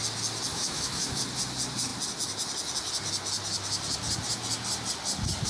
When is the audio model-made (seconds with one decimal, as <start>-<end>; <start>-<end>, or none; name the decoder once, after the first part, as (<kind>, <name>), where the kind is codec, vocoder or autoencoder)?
0.5-1.2 (autoencoder, DAC-VAE)